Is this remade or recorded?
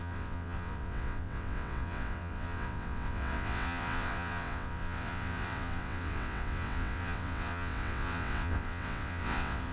remade